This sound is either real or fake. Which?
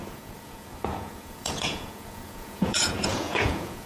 fake